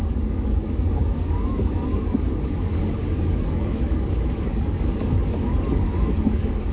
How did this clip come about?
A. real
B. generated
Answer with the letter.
B